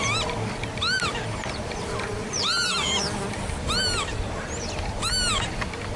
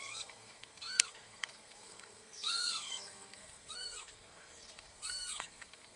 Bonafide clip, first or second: first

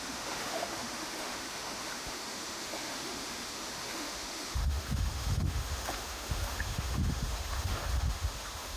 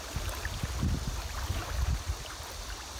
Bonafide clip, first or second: second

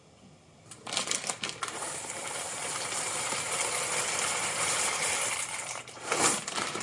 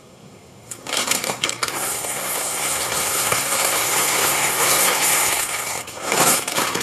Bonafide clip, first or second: first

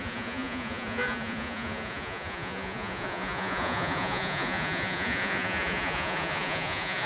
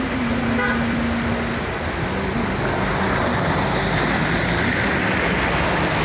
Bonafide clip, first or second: second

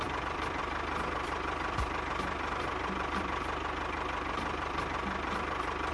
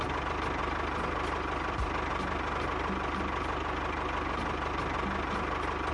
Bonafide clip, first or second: second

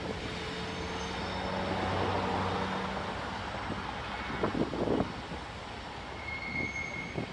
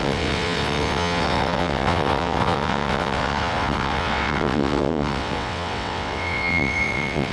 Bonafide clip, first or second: first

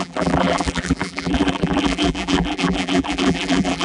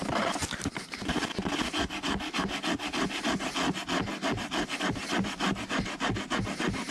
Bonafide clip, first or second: second